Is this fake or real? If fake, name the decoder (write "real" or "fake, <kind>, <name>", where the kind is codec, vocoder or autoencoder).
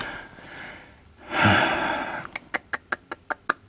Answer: real